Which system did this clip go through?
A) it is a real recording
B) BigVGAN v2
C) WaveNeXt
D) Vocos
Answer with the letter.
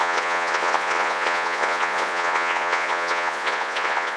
D